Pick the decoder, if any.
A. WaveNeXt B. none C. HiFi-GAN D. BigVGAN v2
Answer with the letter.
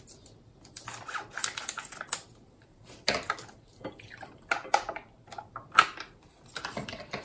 B